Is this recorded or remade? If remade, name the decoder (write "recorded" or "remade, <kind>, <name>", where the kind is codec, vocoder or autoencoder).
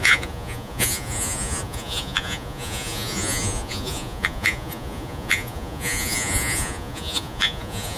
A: remade, vocoder, Vocos